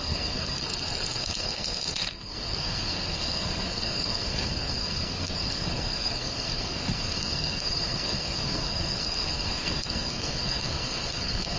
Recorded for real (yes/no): no